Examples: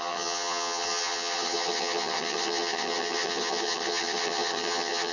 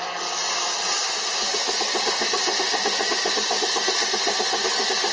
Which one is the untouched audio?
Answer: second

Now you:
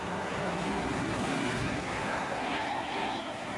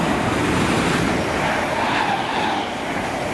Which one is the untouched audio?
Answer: second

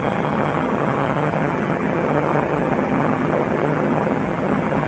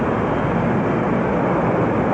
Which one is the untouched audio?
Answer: second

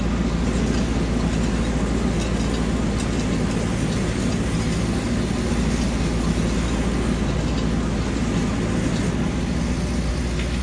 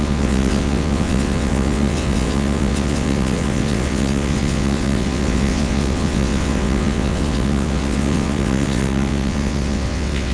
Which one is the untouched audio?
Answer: first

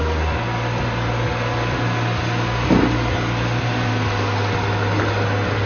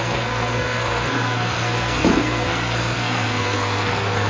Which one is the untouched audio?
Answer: first